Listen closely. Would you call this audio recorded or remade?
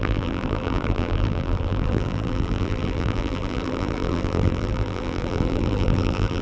remade